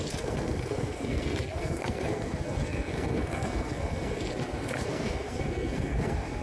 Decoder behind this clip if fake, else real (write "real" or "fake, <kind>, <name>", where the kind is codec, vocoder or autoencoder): fake, codec, SNAC